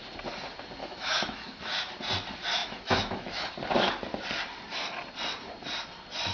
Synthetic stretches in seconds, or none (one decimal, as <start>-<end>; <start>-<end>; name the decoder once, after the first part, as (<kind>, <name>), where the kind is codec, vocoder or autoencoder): 0.8-1.9 (autoencoder, DAC-VAE); 2.6-3.5